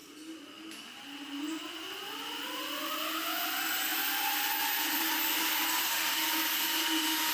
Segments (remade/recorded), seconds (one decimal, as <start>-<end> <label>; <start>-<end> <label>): 0.0-5.8 recorded; 5.8-6.3 remade; 6.3-7.3 recorded